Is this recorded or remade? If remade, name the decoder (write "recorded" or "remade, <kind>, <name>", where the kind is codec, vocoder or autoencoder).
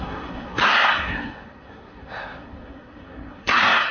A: remade, codec, SNAC